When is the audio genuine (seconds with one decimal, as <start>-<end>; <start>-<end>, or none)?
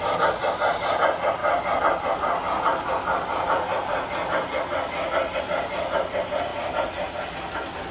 0.0-7.9